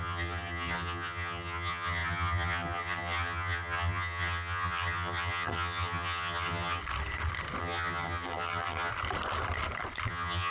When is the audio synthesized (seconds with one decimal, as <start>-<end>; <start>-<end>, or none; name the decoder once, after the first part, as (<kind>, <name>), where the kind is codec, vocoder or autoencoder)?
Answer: 0.0-6.8 (vocoder, HiFi-GAN); 7.6-8.9; 10.1-10.5